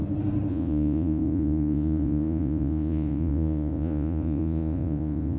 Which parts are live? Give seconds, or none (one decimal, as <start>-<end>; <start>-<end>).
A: 0.0-0.5